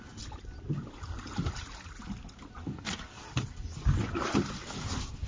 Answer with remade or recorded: recorded